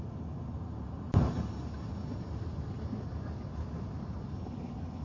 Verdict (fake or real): real